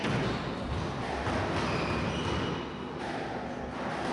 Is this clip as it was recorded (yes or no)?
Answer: yes